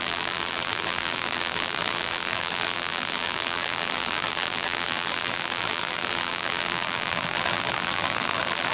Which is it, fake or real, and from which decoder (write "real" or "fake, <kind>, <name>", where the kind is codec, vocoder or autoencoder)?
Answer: fake, vocoder, BigVGAN v2